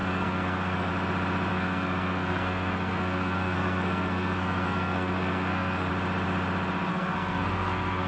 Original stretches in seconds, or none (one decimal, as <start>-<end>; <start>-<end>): 0.9-1.5; 5.9-6.9